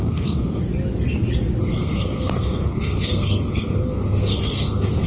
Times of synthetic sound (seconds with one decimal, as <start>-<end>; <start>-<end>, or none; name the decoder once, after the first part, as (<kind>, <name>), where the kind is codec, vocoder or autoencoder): 0.0-0.6 (codec, SNAC); 1.6-5.1